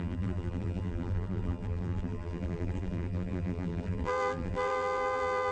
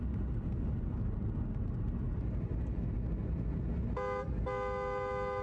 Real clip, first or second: second